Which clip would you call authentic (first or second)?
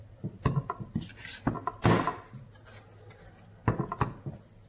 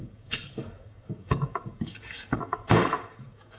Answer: first